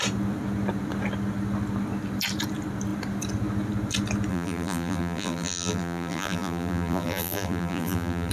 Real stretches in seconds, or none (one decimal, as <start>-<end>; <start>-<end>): 0.0-4.3